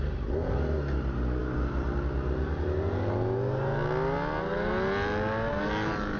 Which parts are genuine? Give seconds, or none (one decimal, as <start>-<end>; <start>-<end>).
0.0-6.2